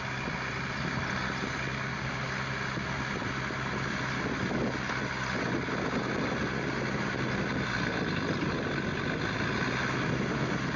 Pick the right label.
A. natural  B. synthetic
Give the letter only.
A